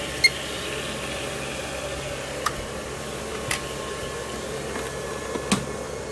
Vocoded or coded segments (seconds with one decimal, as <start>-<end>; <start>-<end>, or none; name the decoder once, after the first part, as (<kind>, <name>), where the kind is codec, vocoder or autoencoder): none